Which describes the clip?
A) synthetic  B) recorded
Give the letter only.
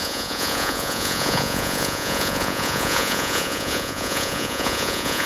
A